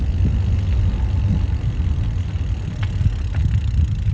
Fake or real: real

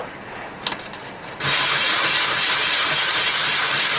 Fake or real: fake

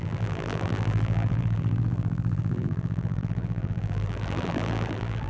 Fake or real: fake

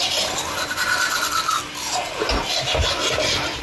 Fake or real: real